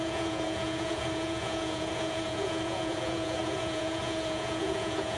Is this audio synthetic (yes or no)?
yes